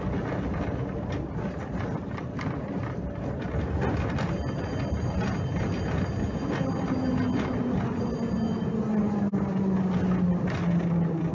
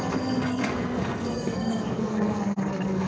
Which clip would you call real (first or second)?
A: first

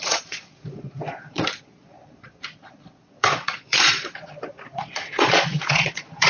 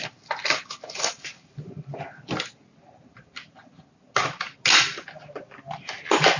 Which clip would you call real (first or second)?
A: second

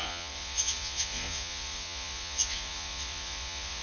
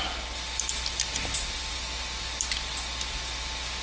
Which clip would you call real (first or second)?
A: second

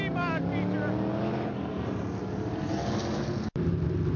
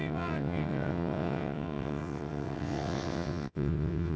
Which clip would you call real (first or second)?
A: first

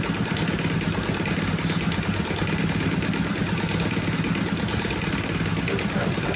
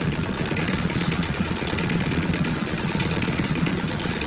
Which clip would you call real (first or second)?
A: first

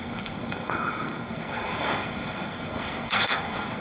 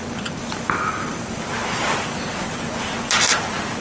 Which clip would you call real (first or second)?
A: second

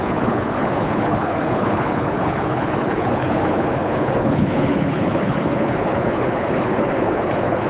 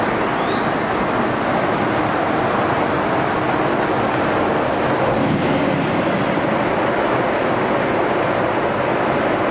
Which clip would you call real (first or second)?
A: second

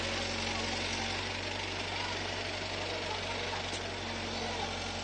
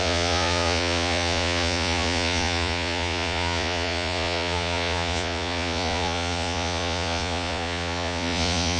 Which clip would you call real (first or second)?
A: first